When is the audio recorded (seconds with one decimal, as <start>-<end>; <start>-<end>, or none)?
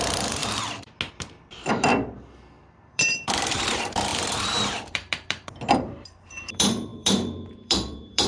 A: 0.4-1.1; 1.9-2.8